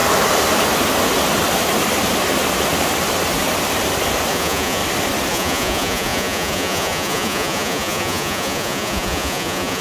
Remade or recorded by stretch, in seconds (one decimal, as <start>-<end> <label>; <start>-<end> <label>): 0.0-4.3 recorded; 4.3-4.8 remade; 4.8-5.3 recorded; 5.3-9.8 remade